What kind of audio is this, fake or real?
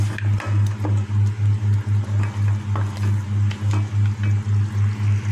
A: real